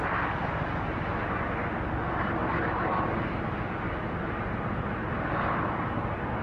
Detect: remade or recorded recorded